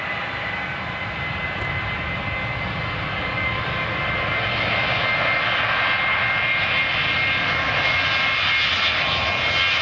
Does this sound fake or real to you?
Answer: real